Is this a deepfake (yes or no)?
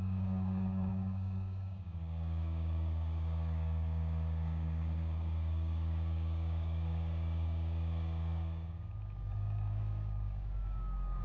yes